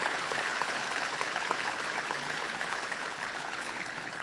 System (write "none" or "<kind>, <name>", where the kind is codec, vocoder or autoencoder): codec, HILCodec